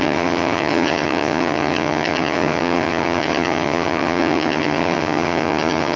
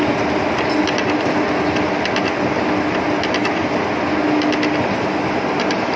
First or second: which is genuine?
second